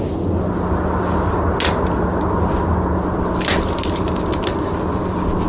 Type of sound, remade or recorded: recorded